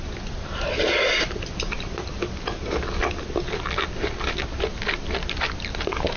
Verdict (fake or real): real